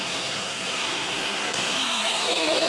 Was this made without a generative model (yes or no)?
no